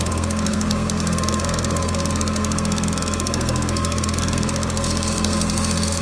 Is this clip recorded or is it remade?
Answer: remade